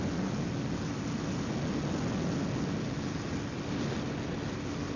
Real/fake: real